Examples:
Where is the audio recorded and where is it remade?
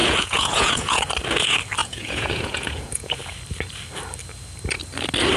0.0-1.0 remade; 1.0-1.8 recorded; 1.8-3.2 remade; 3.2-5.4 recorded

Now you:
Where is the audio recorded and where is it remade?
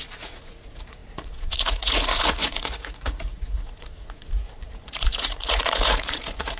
0.0-6.6 remade